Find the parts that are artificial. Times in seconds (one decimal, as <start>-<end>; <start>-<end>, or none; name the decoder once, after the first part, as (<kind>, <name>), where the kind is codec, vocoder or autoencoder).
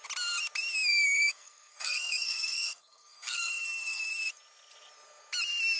0.9-4.1 (codec, SNAC)